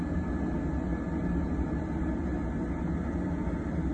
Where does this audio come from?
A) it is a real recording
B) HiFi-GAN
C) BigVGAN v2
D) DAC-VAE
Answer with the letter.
A